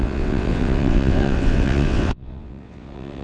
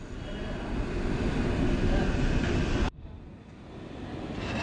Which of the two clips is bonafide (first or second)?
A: second